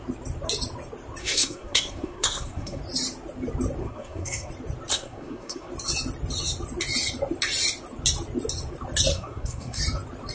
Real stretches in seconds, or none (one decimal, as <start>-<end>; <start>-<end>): 0.0-1.2; 2.8-3.8; 4.5-4.9; 5.7-9.1; 9.8-10.3